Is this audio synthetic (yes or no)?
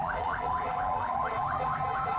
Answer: yes